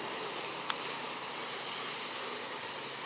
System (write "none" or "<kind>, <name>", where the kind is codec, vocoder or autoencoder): none